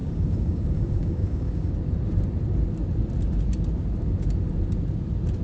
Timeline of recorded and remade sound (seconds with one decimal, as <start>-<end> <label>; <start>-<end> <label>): 0.0-1.7 remade; 1.7-5.4 recorded